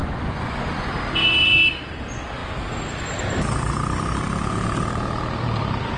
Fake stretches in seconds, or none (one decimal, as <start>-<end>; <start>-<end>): 0.0-0.9